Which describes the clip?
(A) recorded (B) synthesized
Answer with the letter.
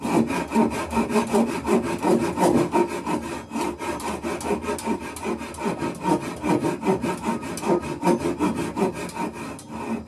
A